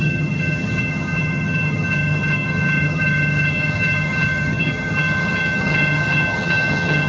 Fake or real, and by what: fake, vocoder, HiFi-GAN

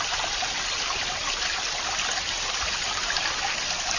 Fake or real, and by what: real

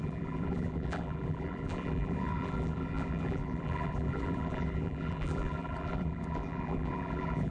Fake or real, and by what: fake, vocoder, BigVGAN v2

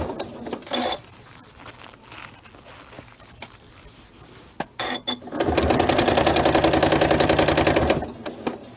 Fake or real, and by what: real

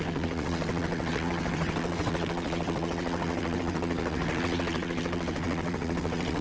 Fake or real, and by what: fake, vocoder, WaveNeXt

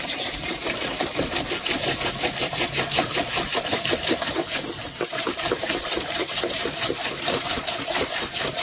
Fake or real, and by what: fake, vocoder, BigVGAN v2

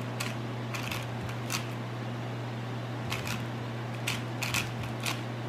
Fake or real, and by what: real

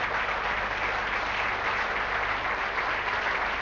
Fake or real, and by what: real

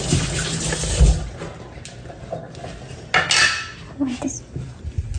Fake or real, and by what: real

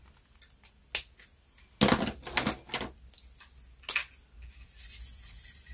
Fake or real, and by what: real